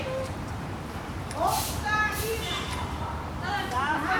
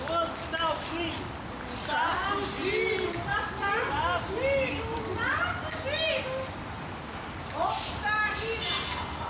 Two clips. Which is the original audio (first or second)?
second